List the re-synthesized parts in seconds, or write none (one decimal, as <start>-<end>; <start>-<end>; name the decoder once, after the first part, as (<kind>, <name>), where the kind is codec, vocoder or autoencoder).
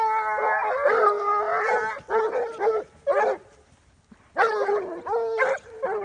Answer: none